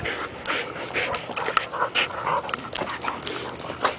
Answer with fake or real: real